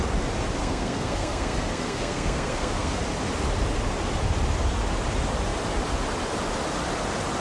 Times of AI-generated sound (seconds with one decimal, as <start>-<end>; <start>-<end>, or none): 0.6-3.0

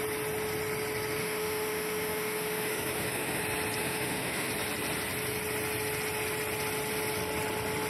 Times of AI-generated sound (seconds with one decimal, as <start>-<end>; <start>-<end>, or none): 1.2-3.4; 3.8-4.5

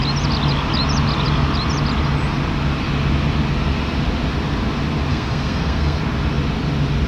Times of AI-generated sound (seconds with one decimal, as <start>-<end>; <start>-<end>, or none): 5.1-6.0

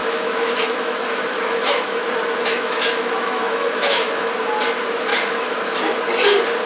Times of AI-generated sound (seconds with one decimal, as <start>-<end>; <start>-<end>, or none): 0.0-2.0; 2.4-4.3; 5.1-5.8

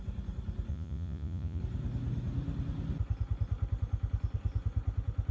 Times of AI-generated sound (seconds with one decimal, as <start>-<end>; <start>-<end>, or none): 0.7-1.6

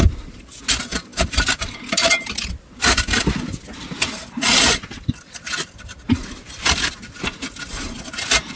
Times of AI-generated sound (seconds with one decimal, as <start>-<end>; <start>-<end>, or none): none